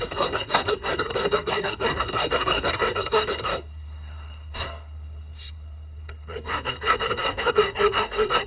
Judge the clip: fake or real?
fake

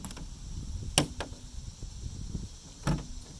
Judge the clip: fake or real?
real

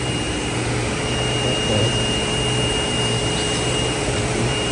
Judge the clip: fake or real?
fake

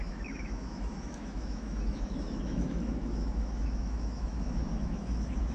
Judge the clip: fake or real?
fake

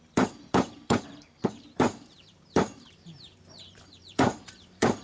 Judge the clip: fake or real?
fake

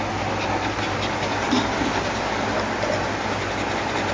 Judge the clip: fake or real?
real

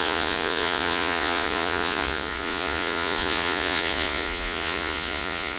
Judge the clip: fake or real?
fake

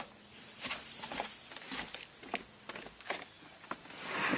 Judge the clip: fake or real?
real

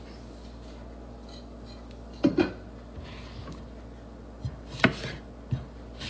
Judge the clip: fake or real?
real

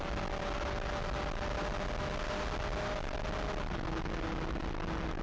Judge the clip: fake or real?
real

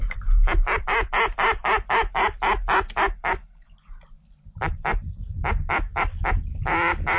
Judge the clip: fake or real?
real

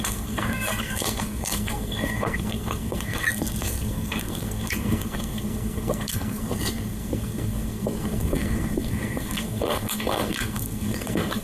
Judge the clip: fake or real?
fake